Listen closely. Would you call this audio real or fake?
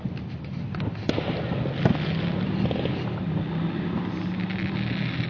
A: real